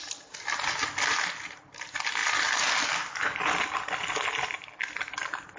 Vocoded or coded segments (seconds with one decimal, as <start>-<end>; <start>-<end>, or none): none